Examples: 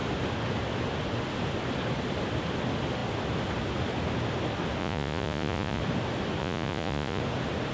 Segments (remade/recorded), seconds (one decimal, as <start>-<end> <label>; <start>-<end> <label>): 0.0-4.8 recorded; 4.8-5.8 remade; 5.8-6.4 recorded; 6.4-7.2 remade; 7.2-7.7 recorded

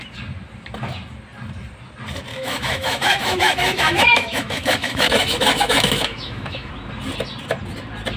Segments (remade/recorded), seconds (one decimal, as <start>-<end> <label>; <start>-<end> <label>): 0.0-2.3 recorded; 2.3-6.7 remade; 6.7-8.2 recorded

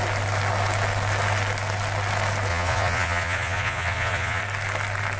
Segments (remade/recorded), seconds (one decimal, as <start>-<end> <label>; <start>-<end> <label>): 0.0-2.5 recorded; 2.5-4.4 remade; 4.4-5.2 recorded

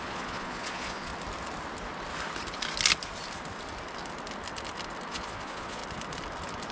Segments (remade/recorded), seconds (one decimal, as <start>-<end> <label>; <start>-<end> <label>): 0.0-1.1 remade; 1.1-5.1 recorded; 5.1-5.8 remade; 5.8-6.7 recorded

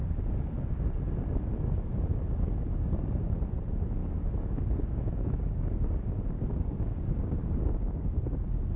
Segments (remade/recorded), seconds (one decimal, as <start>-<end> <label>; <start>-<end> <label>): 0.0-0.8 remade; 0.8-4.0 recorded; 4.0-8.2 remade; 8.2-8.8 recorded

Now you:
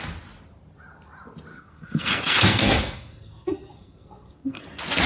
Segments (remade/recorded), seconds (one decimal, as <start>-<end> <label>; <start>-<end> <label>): 0.0-1.5 recorded; 1.5-4.6 remade; 4.6-5.1 recorded